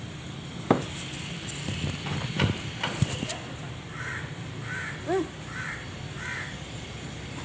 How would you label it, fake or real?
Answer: fake